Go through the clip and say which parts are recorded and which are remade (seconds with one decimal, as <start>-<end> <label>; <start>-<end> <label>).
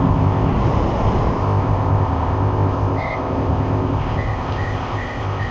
0.0-0.5 remade; 0.5-1.4 recorded; 1.4-5.5 remade